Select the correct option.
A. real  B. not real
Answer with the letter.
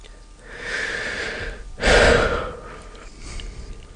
A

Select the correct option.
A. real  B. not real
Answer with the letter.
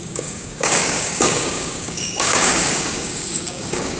B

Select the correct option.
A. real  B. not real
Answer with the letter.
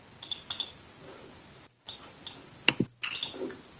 A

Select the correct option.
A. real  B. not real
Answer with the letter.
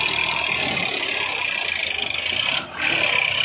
A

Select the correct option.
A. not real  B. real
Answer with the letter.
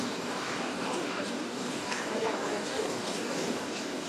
A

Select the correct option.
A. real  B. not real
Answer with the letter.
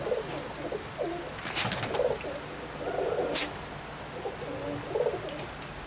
A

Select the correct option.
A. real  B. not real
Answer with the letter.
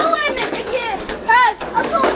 B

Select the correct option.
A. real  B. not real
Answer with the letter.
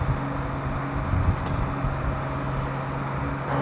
A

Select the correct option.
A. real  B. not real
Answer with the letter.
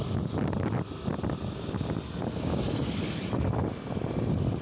A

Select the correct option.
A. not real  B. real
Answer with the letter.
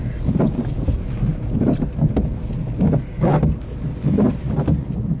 B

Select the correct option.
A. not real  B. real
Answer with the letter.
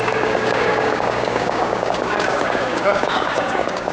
A